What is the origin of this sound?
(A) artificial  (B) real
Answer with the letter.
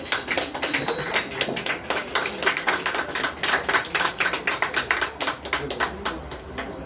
B